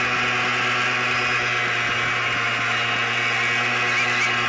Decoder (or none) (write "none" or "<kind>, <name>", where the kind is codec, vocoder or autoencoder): none